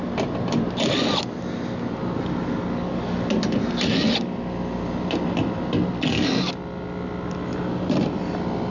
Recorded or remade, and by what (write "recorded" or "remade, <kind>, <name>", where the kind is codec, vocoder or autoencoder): recorded